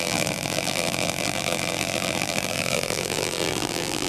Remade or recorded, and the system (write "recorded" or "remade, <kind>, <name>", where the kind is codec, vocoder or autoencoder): remade, vocoder, BigVGAN v2